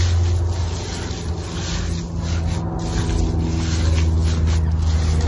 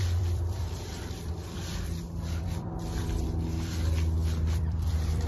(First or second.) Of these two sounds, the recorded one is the first